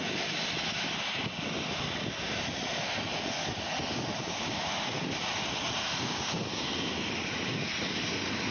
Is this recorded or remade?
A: recorded